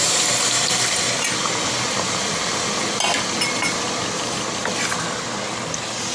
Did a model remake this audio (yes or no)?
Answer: no